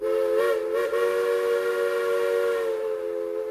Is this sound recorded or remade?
recorded